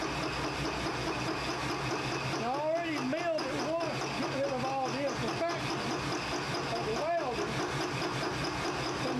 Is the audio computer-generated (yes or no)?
no